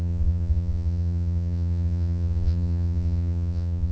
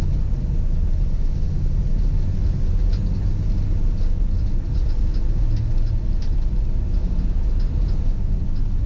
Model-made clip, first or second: first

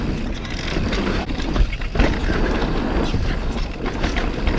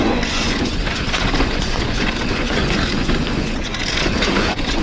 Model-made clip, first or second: second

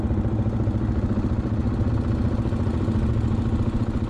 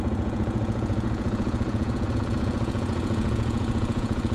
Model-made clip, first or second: second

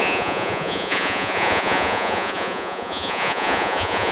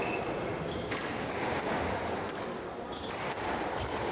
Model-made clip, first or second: first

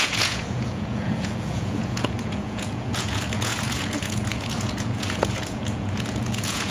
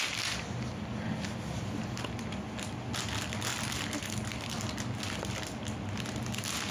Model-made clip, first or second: first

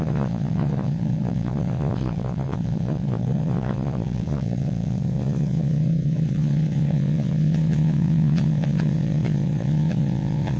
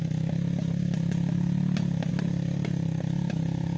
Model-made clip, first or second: first